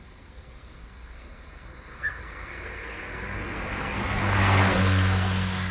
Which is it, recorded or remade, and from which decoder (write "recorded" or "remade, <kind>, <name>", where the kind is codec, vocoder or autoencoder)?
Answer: remade, codec, SNAC